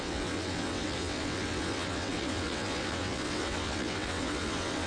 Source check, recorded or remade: remade